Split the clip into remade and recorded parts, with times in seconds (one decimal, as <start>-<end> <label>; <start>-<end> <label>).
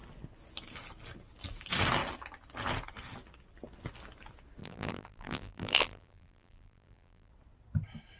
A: 0.0-4.6 recorded; 4.6-7.3 remade; 7.3-8.2 recorded